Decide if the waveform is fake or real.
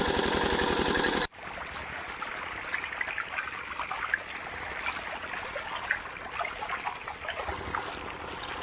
real